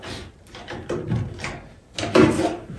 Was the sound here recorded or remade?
recorded